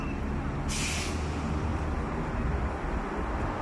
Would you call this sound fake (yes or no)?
no